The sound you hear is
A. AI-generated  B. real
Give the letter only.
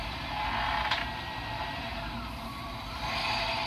B